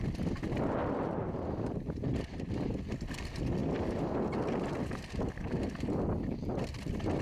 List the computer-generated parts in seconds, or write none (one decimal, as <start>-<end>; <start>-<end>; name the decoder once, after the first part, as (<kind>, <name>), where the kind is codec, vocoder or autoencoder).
0.8-3.0 (vocoder, BigVGAN v2)